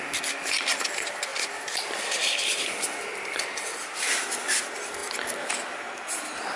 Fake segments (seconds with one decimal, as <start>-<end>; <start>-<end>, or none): 1.3-4.4